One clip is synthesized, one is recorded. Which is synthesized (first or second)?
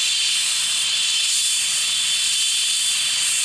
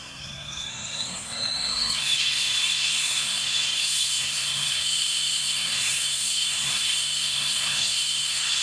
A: second